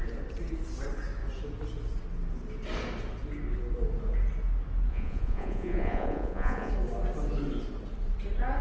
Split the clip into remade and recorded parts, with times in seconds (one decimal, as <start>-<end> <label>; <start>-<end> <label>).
0.0-4.9 recorded; 4.9-6.7 remade; 6.7-8.6 recorded